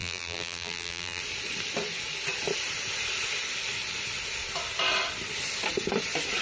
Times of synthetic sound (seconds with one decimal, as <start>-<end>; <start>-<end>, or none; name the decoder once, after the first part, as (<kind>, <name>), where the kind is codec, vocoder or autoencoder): 0.0-1.2 (vocoder, BigVGAN v2)